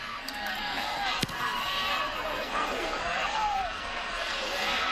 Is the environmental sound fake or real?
fake